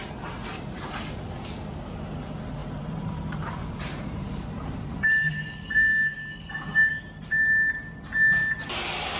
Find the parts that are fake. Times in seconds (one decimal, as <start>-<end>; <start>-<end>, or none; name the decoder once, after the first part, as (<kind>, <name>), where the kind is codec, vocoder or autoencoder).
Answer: 2.6-5.9 (vocoder, BigVGAN v2)